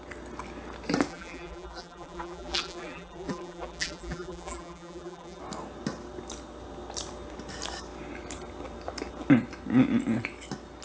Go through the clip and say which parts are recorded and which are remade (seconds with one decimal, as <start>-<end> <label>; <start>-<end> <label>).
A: 0.0-1.1 recorded; 1.1-5.4 remade; 5.4-10.8 recorded